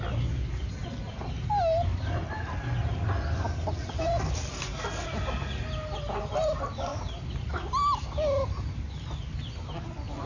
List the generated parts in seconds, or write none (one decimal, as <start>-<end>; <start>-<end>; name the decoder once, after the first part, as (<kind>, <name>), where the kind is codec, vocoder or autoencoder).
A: none